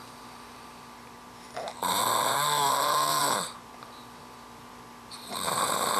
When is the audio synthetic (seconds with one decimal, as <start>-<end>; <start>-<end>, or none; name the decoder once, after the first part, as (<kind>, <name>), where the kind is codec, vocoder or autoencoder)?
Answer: 0.0-2.0 (vocoder, BigVGAN v2); 2.7-6.0